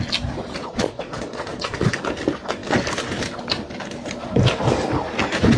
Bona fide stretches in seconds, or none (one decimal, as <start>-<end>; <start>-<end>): 0.0-0.6; 1.9-5.6